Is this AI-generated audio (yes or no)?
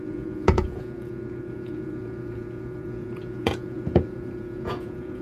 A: yes